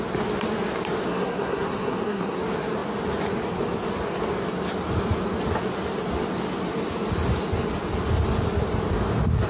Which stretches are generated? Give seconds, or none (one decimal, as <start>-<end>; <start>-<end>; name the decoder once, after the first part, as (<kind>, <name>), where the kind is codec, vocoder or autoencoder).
1.1-2.4 (codec, SNAC)